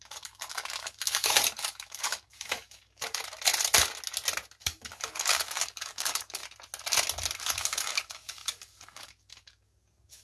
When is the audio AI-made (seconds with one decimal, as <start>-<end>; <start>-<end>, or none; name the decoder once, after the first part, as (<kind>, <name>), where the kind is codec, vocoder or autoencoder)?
0.0-3.2 (codec, DAC); 4.6-6.4; 7.4-10.2